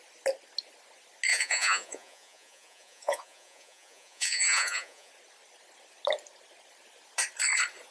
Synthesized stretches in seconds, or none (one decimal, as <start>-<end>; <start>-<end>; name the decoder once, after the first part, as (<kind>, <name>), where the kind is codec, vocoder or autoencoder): 1.3-5.1 (vocoder, Vocos)